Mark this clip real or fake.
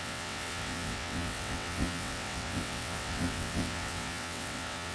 fake